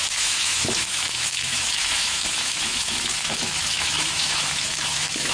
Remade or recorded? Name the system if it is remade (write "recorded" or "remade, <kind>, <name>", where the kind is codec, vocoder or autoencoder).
remade, autoencoder, DAC-VAE